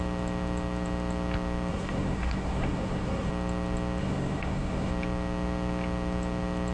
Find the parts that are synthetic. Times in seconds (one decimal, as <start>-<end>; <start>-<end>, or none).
1.7-3.3; 4.0-4.9